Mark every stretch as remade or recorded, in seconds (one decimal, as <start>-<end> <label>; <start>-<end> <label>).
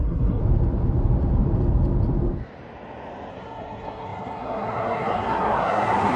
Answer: 0.0-0.4 remade; 0.4-3.3 recorded; 3.3-6.2 remade